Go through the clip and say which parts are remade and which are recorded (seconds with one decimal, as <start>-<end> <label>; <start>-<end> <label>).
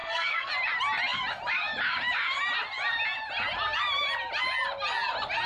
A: 0.0-0.5 remade; 0.5-5.5 recorded